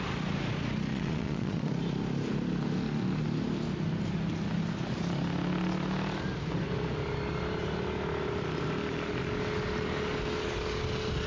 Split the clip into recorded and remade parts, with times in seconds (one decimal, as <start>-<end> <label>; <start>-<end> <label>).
0.0-0.9 recorded; 0.9-1.7 remade; 1.7-11.3 recorded